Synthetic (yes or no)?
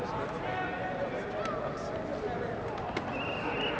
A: no